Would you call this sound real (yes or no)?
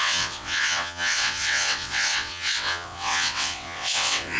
no